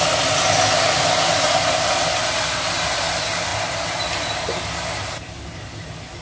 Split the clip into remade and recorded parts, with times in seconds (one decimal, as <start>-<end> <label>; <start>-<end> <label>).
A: 0.0-6.2 recorded